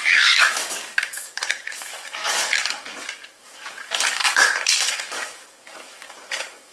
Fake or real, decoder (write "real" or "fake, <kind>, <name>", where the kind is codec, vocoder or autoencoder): fake, codec, DAC